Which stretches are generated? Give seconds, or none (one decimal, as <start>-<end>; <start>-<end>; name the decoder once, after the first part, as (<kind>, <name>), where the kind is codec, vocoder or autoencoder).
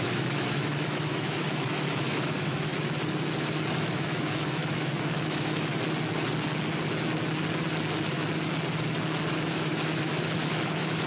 0.0-2.7 (autoencoder, DAC-VAE); 3.8-5.7; 9.3-11.1